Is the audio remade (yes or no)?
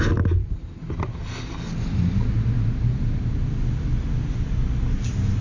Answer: no